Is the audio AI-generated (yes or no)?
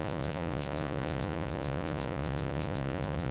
yes